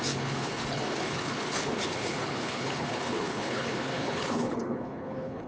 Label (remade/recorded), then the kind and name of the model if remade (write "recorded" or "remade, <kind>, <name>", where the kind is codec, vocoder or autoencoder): remade, codec, HILCodec